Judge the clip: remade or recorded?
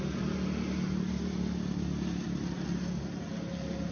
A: recorded